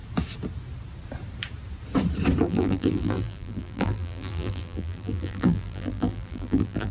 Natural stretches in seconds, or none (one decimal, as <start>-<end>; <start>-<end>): 0.0-2.4